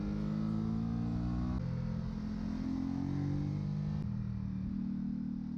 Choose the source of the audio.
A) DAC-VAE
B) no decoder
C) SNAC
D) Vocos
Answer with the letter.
B